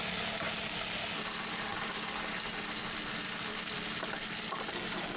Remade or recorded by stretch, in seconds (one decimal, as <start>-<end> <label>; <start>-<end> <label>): 0.0-5.2 recorded